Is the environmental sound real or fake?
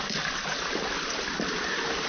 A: real